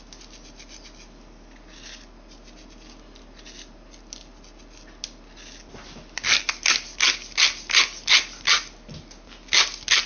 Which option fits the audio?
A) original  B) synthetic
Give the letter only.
A